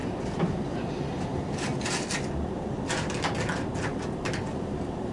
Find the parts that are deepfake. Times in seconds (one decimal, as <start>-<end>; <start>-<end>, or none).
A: none